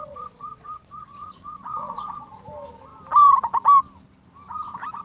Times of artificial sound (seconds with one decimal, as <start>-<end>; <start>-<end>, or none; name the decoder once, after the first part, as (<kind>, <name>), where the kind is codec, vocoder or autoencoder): 0.0-2.3 (vocoder, Vocos)